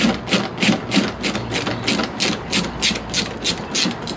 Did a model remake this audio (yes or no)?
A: no